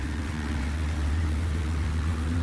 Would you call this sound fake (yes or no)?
yes